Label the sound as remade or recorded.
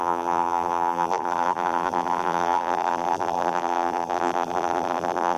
remade